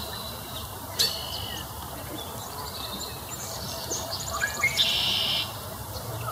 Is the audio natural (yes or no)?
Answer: no